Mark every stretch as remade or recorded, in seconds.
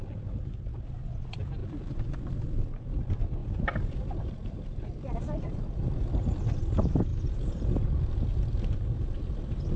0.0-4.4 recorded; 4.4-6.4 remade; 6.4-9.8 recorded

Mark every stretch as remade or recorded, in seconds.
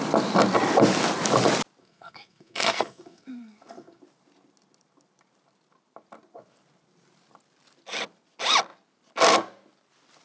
0.0-1.8 recorded; 1.8-4.0 remade; 4.0-10.2 recorded